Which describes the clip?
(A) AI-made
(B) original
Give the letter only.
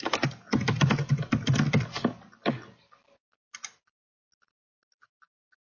B